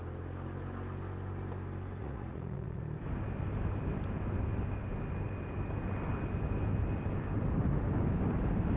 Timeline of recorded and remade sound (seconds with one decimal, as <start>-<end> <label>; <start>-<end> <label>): 0.0-2.0 recorded; 2.0-2.8 remade; 2.8-8.8 recorded